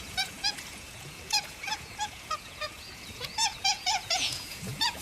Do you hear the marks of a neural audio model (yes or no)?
yes